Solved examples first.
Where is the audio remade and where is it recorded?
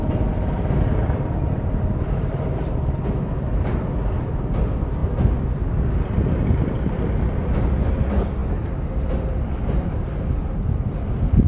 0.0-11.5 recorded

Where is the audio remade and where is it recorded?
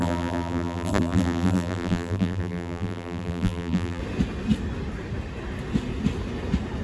0.0-4.0 remade; 4.0-6.8 recorded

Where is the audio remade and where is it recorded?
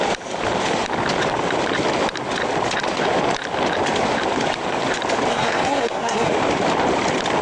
0.0-5.3 recorded; 5.3-6.3 remade; 6.3-7.4 recorded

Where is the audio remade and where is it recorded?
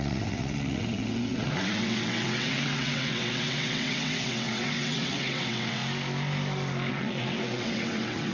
0.0-5.8 remade; 5.8-6.9 recorded; 6.9-8.3 remade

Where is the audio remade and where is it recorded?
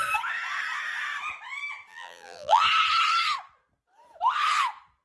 0.0-1.9 recorded; 1.9-2.6 remade; 2.6-5.0 recorded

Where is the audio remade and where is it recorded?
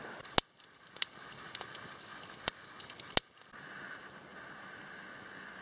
0.0-5.6 recorded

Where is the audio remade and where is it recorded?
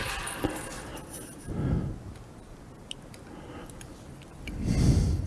0.0-5.3 recorded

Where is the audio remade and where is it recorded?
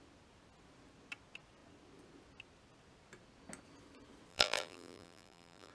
0.0-4.3 recorded; 4.3-5.7 remade